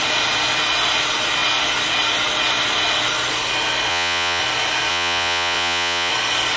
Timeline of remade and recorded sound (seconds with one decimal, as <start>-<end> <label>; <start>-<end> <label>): 0.0-3.9 recorded; 3.9-4.4 remade; 4.4-4.9 recorded; 4.9-6.1 remade; 6.1-6.6 recorded